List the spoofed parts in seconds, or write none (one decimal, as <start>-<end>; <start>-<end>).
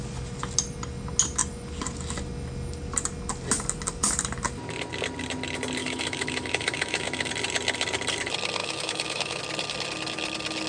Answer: 5.8-7.3; 8.6-9.4